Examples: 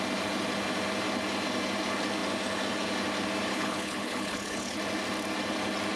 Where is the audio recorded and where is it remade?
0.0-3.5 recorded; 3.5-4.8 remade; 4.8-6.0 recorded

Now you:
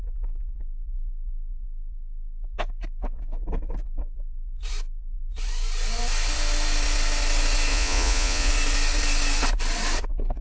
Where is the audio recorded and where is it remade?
0.0-7.7 recorded; 7.7-8.5 remade; 8.5-10.4 recorded

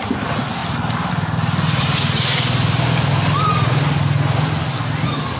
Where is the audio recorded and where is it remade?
0.0-5.4 recorded

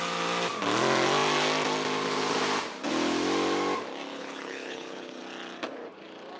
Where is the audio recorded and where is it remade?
0.0-4.1 recorded; 4.1-5.2 remade; 5.2-6.4 recorded

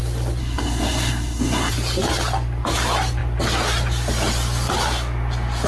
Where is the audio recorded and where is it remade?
0.0-0.4 recorded; 0.4-1.7 remade; 1.7-5.7 recorded